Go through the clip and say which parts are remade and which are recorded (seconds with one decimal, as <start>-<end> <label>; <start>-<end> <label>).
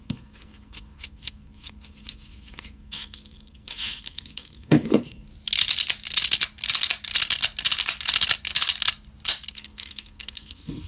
0.0-5.3 remade; 5.3-9.5 recorded; 9.5-10.9 remade